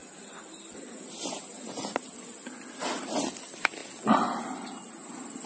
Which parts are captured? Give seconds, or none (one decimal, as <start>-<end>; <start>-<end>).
0.0-5.5